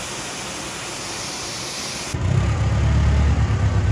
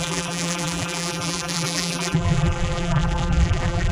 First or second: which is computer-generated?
second